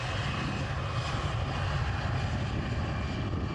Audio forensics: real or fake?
real